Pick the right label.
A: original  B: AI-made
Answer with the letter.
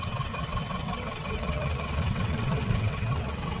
B